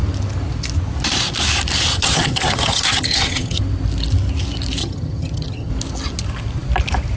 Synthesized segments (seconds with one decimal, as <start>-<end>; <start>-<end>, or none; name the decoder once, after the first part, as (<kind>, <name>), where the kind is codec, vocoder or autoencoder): 1.9-3.6 (vocoder, HiFi-GAN); 4.8-5.7